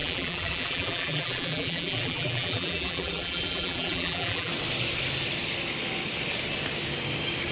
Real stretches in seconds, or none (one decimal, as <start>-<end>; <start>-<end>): 4.5-7.5